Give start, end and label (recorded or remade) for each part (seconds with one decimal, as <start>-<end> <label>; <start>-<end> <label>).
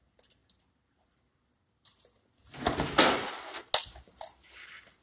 0.0-5.0 recorded